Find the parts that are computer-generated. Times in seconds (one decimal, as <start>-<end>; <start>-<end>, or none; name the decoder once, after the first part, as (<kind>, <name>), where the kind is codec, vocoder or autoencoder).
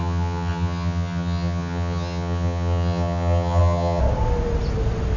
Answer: 0.0-4.0 (vocoder, HiFi-GAN)